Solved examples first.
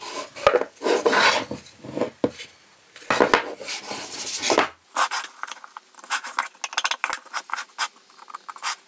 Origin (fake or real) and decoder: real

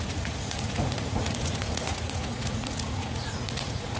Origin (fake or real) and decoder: fake, vocoder, Vocos